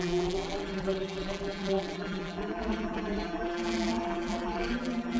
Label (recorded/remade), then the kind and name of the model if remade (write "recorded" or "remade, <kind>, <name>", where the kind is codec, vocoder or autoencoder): remade, vocoder, BigVGAN v2